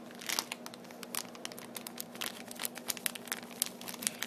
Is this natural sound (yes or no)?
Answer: yes